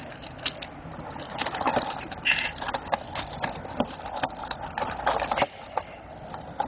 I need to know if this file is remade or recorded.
recorded